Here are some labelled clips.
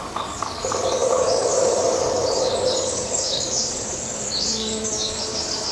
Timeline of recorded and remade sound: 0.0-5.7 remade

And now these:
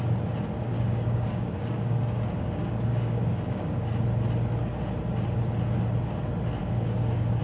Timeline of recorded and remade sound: 0.0-0.7 recorded; 0.7-3.9 remade; 3.9-6.6 recorded; 6.6-7.4 remade

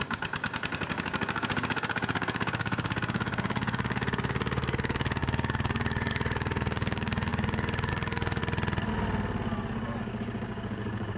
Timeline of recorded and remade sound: 0.0-8.4 remade; 8.4-10.0 recorded; 10.0-11.2 remade